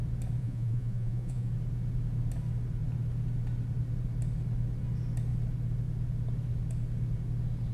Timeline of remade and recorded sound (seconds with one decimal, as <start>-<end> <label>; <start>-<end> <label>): 0.0-0.4 recorded; 0.4-1.5 remade; 1.5-7.7 recorded

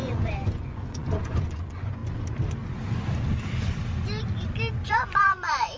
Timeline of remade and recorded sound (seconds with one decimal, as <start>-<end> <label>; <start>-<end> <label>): 0.0-2.0 remade; 2.0-4.9 recorded; 4.9-5.8 remade

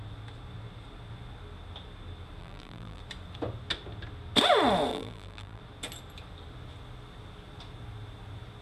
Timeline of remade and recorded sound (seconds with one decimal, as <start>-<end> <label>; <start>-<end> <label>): 0.0-2.4 recorded; 2.4-3.0 remade; 3.0-4.9 recorded; 4.9-5.6 remade; 5.6-8.6 recorded

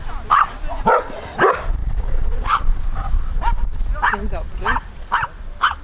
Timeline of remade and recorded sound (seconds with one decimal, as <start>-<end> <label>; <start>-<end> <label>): 0.0-1.8 recorded; 1.8-5.0 remade; 5.0-5.8 recorded

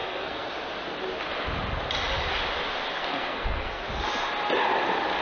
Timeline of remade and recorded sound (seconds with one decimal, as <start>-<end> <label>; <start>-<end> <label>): 0.0-0.5 remade; 0.5-2.9 recorded; 2.9-3.8 remade; 3.8-5.2 recorded